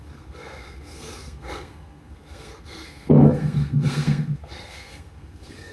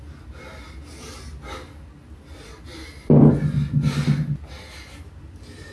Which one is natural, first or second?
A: second